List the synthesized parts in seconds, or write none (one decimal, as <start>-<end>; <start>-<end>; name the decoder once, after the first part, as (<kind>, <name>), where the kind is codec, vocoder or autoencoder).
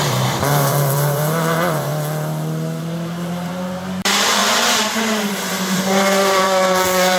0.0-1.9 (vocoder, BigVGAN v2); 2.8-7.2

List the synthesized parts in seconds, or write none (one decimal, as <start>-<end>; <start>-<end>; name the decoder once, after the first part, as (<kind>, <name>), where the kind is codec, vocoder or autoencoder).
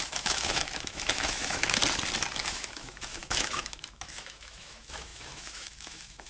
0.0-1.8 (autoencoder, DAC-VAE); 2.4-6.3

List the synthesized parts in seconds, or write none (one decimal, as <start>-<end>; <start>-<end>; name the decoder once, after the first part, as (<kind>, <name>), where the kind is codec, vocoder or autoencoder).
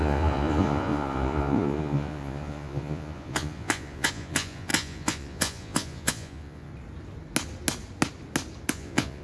0.0-6.7 (vocoder, Vocos); 8.7-9.2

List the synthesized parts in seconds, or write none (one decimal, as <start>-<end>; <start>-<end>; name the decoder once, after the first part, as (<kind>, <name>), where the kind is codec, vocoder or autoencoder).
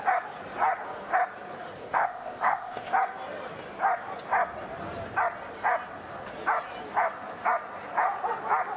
1.8-2.9 (codec, ZipCodec)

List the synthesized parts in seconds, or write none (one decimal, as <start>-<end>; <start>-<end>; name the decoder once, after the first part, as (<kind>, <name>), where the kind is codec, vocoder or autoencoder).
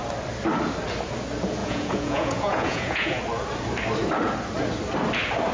1.6-3.2 (vocoder, Vocos)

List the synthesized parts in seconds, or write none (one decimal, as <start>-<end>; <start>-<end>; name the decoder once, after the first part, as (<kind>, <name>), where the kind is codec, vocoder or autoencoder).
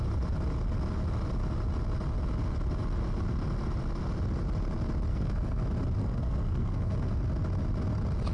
5.1-5.6 (codec, SNAC); 6.0-7.1